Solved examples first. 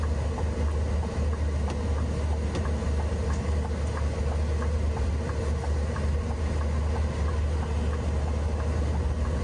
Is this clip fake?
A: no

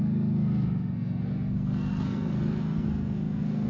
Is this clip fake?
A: yes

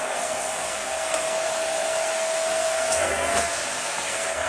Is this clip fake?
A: yes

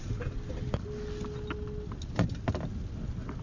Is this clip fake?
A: no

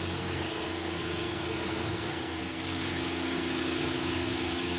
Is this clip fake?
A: yes